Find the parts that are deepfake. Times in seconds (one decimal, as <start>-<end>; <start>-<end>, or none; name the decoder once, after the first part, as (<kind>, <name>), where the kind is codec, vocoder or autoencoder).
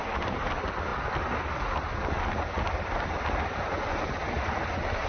none